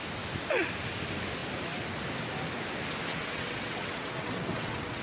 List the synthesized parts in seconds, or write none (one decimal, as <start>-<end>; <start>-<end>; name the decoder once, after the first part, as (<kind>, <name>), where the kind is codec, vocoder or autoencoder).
3.1-5.0 (vocoder, WaveNeXt)

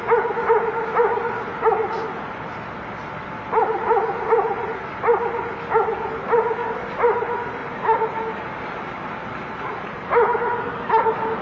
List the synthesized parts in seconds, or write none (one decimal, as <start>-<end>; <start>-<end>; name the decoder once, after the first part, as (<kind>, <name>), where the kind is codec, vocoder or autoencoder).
none

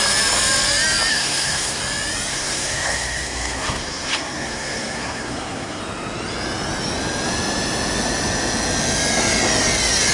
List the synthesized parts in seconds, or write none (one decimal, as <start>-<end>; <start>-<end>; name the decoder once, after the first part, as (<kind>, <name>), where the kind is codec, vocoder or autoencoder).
1.1-1.8 (codec, SNAC); 2.3-5.8

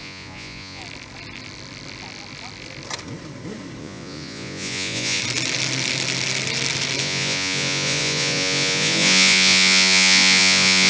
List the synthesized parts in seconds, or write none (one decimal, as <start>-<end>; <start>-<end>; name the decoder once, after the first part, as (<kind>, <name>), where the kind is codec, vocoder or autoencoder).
0.0-0.8 (vocoder, Vocos); 3.8-5.2; 7.0-10.9

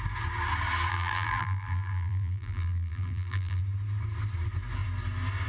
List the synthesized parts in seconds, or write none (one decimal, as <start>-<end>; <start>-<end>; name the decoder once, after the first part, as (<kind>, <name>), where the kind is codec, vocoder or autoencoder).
0.9-3.6 (vocoder, BigVGAN v2)

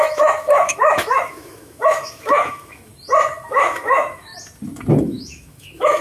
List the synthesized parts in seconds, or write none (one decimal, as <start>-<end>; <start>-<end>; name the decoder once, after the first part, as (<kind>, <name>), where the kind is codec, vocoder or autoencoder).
0.0-2.9 (autoencoder, DAC-VAE); 3.5-4.3; 5.0-6.0